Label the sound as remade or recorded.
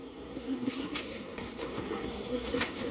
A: remade